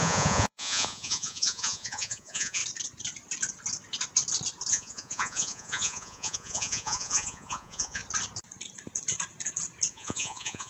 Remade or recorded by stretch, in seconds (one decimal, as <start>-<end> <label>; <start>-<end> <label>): 0.0-2.6 remade; 2.6-4.7 recorded; 4.7-8.0 remade; 8.0-9.9 recorded; 9.9-10.7 remade